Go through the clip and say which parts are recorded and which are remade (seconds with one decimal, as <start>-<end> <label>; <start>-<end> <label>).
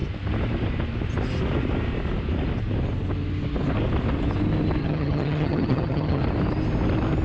0.0-4.8 recorded; 4.8-6.2 remade; 6.2-7.2 recorded